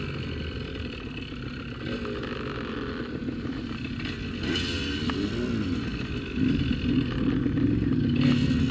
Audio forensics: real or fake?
real